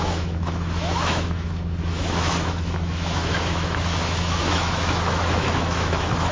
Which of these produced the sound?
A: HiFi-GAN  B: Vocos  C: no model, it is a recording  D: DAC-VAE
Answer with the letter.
D